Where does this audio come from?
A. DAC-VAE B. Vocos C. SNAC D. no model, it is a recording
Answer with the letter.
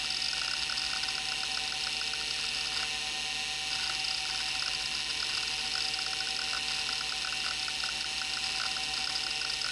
D